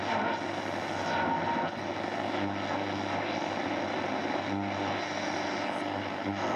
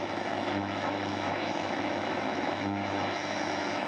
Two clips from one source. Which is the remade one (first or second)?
second